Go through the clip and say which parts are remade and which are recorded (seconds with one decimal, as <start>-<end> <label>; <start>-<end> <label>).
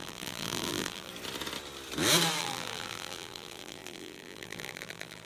0.0-1.1 remade; 1.1-2.4 recorded; 2.4-5.3 remade